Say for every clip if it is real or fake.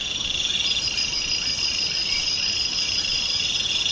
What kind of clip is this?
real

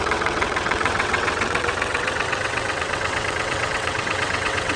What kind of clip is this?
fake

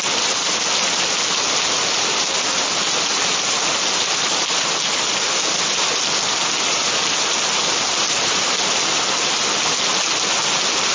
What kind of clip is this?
real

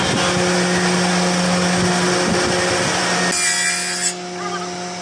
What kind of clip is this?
real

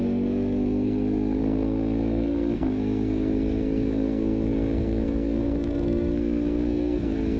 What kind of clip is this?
fake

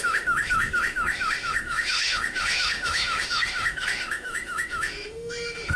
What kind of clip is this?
fake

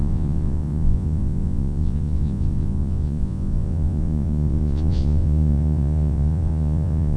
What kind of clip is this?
fake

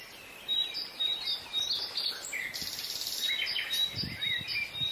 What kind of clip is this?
real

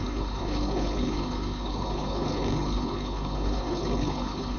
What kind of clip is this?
fake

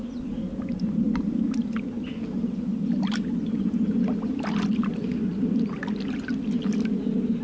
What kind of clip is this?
real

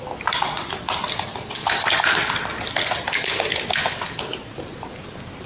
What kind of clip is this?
real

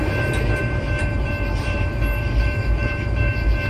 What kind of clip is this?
fake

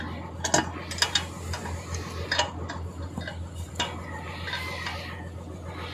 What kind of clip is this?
real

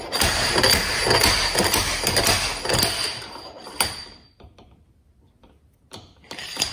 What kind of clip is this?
real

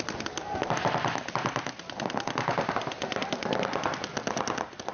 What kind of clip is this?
real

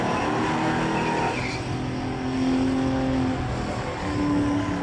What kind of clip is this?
real